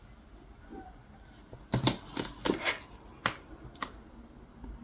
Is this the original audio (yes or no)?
yes